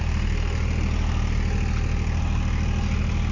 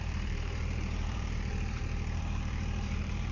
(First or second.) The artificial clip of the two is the second